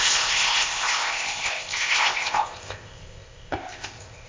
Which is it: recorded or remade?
remade